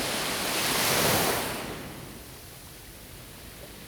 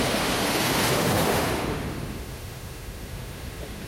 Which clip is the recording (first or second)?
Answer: first